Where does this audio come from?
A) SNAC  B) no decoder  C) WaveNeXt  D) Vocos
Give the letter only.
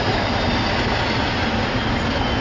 B